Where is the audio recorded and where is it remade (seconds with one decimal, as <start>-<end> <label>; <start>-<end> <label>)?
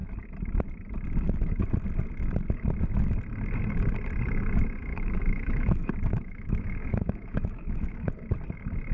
0.0-4.9 recorded; 4.9-8.1 remade; 8.1-8.9 recorded